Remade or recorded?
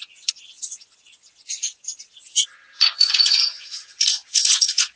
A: remade